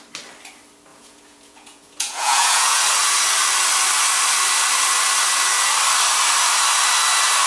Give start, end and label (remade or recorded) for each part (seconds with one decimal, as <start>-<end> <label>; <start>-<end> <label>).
0.0-0.9 recorded; 0.9-2.8 remade; 2.8-7.5 recorded